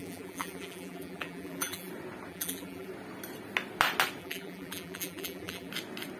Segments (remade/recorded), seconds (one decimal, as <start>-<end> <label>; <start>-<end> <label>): 0.0-1.9 remade; 1.9-2.3 recorded; 2.3-2.9 remade; 2.9-4.2 recorded; 4.2-5.7 remade; 5.7-6.2 recorded